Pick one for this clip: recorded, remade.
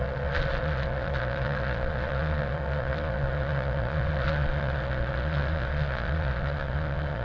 remade